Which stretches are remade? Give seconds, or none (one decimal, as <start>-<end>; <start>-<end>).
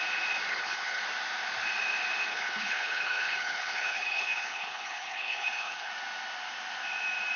0.5-1.0; 2.3-5.9